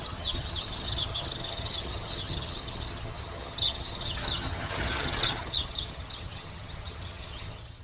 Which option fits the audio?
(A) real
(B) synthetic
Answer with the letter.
B